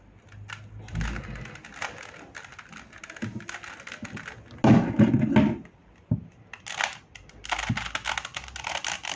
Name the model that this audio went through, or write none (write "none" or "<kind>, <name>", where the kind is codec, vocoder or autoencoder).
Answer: none